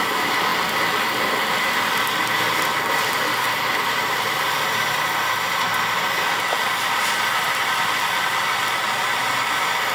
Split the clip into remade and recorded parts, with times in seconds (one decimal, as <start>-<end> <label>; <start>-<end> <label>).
0.0-0.5 remade; 0.5-1.1 recorded; 1.1-9.9 remade